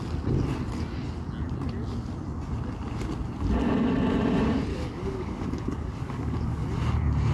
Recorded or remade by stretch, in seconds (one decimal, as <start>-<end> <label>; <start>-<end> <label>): 0.0-4.7 recorded; 4.7-6.6 remade; 6.6-7.3 recorded